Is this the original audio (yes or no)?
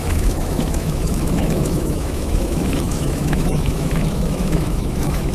no